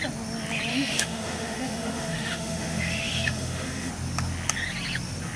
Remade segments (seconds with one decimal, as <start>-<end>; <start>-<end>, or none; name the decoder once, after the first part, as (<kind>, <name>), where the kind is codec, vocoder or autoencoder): 0.7-3.9 (autoencoder, DAC-VAE)